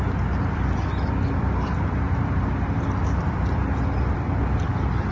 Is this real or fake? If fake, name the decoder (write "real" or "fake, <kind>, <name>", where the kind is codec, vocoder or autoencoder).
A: real